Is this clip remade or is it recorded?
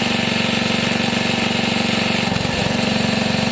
recorded